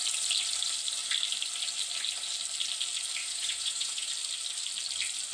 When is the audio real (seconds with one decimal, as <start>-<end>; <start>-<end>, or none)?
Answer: 0.0-3.2; 4.1-5.3